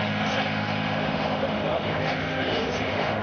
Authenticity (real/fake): fake